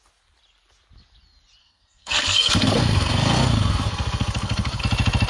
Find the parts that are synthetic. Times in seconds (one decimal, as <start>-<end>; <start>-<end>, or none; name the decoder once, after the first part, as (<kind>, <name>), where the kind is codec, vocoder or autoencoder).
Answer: 1.6-4.8 (codec, SNAC)